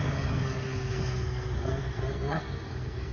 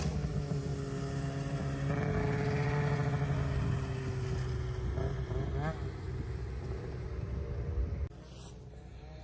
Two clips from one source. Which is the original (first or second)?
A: second